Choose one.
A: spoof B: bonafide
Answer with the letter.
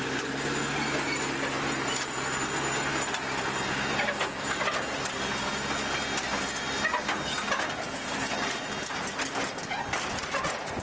B